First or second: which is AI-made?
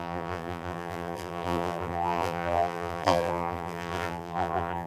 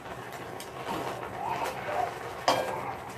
first